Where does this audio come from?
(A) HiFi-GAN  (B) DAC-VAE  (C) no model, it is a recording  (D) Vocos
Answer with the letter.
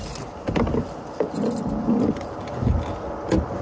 C